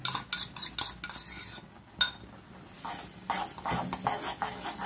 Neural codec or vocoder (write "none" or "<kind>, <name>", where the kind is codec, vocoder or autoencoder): none